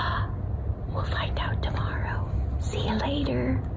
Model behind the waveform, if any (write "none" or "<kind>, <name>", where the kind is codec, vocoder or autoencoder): none